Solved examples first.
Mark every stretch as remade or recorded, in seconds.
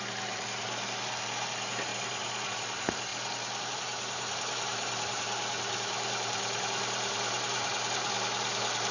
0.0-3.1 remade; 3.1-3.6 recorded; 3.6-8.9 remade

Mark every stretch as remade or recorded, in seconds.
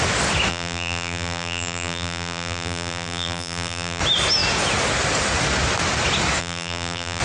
0.0-0.5 recorded; 0.5-4.0 remade; 4.0-6.4 recorded; 6.4-7.2 remade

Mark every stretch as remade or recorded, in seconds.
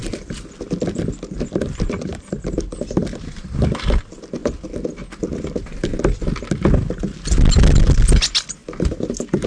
0.0-4.4 remade; 4.4-7.5 recorded; 7.5-8.6 remade; 8.6-9.5 recorded